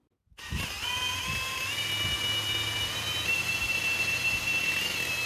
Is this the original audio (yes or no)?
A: yes